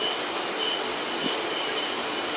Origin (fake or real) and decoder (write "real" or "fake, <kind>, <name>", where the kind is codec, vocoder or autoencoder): real